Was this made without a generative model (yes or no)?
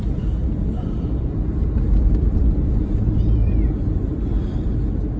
yes